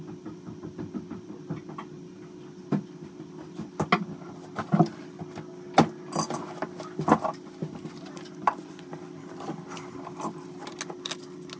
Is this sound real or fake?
real